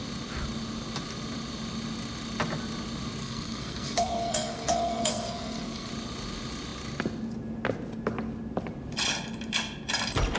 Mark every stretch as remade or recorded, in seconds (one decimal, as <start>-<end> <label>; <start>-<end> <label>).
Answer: 0.0-3.2 recorded; 3.2-5.9 remade; 5.9-10.4 recorded